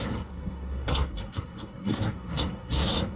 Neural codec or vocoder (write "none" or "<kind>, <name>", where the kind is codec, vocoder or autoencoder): codec, SNAC